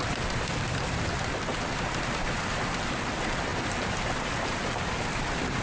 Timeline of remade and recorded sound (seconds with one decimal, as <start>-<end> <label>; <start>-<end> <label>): 0.0-1.5 remade; 1.5-2.8 recorded; 2.8-5.6 remade